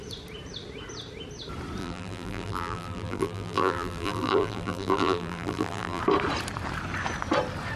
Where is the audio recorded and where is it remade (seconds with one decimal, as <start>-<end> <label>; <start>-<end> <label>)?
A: 0.0-1.8 recorded; 1.8-6.0 remade; 6.0-7.8 recorded